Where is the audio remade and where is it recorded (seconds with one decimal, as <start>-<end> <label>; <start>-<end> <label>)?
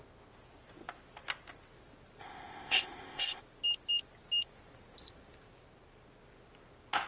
0.0-2.2 recorded; 2.2-3.4 remade; 3.4-7.1 recorded